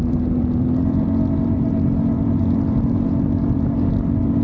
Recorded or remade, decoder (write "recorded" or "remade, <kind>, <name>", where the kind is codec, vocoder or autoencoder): remade, vocoder, BigVGAN v2